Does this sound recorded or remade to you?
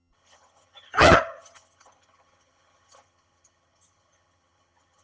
remade